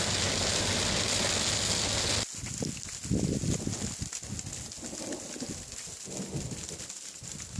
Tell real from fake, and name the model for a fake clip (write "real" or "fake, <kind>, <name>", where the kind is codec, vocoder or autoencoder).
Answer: real